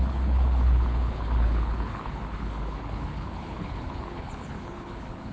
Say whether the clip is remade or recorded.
remade